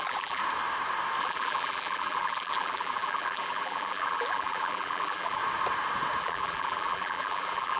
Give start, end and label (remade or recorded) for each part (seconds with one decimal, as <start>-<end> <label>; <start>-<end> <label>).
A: 0.0-0.4 remade; 0.4-1.2 recorded; 1.2-5.4 remade; 5.4-6.2 recorded; 6.2-7.8 remade